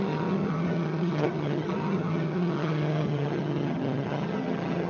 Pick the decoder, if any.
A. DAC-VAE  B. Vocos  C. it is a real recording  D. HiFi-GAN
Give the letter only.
D